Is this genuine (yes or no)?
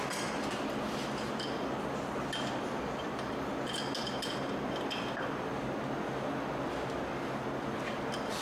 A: yes